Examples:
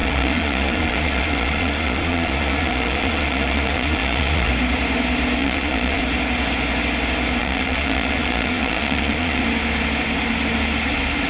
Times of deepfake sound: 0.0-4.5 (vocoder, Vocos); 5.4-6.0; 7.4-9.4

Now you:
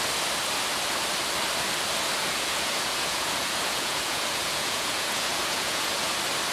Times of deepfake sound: 2.2-6.1 (vocoder, Vocos)

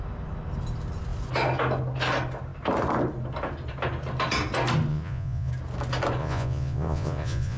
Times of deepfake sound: 4.9-5.5 (vocoder, Vocos); 6.2-7.6

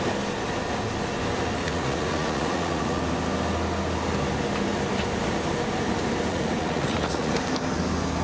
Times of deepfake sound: 1.6-3.0 (vocoder, Vocos); 6.3-7.3

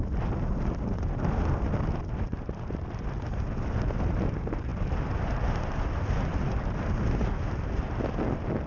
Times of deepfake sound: none

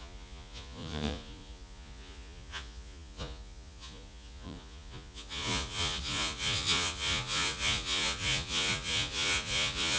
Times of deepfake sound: 0.0-10.0 (vocoder, Vocos)

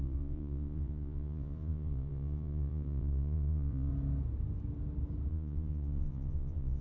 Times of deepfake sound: 0.0-3.9 (vocoder, Vocos); 5.3-6.8